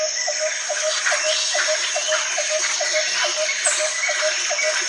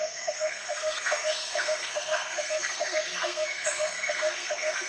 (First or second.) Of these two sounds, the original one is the first